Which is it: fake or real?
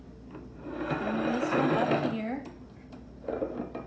real